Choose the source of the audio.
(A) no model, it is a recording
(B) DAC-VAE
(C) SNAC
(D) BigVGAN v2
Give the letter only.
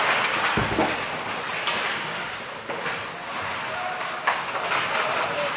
A